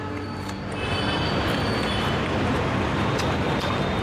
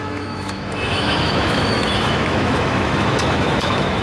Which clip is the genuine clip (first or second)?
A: first